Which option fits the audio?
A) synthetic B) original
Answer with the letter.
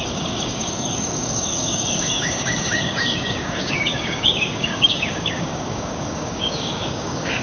A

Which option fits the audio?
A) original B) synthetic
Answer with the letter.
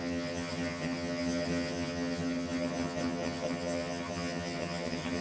B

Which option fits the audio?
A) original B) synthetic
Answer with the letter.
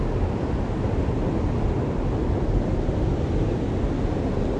A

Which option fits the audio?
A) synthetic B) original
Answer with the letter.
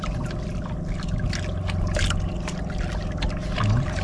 B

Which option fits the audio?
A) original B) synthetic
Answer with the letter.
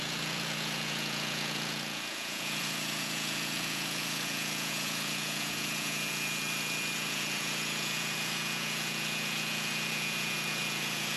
B